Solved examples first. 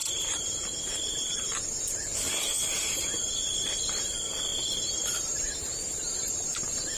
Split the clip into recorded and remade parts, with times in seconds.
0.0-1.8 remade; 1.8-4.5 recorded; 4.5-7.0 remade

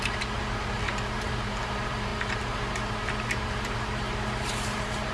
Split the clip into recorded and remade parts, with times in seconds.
0.0-5.1 remade

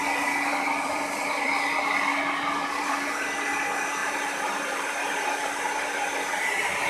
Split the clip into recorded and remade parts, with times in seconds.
0.0-0.5 recorded; 0.5-1.5 remade; 1.5-2.1 recorded; 2.1-3.5 remade; 3.5-4.0 recorded; 4.0-6.9 remade